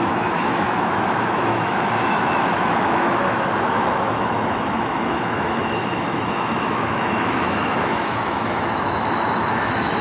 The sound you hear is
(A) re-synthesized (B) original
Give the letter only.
A